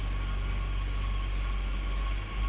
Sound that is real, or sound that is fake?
real